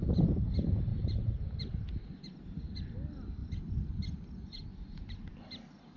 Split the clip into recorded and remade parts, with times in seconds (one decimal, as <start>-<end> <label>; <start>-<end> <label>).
0.0-6.0 recorded